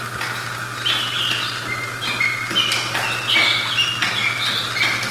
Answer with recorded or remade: recorded